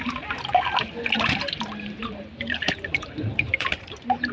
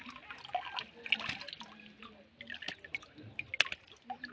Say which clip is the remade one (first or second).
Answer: first